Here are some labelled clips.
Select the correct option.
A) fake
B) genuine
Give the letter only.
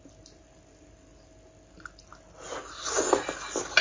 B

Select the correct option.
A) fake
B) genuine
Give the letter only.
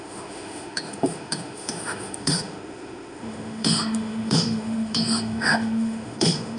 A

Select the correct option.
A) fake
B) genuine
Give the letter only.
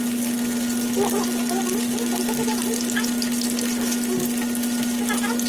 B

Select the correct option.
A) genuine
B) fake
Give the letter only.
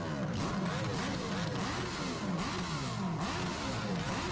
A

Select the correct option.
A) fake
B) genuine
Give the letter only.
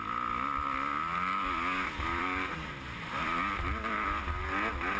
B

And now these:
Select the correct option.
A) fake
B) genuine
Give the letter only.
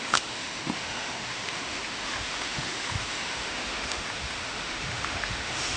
A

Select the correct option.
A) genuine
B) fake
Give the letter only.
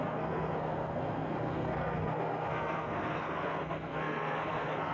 B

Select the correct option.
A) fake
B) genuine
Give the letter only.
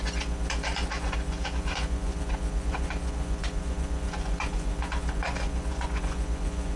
A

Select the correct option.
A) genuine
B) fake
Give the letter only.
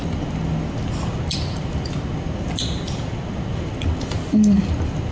A